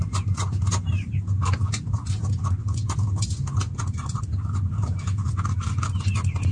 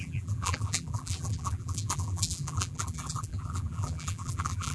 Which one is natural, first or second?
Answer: first